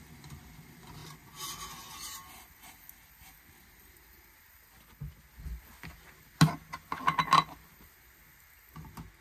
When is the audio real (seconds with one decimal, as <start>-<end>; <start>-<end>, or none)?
0.0-9.2